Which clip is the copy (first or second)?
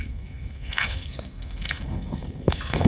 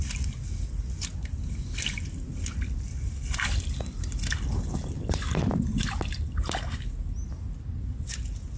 first